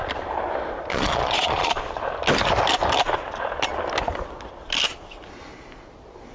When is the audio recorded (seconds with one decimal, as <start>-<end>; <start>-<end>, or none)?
0.0-0.9; 1.7-6.3